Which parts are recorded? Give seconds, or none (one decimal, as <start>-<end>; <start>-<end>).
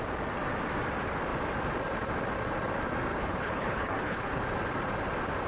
0.0-3.1; 4.4-5.5